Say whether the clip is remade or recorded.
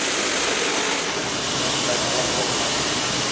recorded